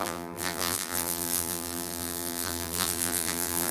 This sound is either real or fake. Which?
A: fake